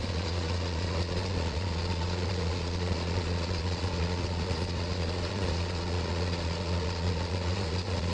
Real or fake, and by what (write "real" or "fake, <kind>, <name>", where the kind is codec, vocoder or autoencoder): fake, vocoder, Vocos